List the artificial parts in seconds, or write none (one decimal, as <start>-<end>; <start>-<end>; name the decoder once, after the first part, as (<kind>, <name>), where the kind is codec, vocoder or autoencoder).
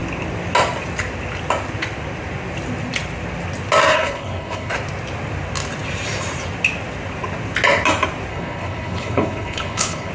3.9-4.7 (codec, HILCodec); 8.3-10.1